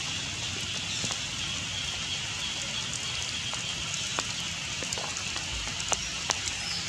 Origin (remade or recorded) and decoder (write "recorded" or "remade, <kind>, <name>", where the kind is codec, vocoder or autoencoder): recorded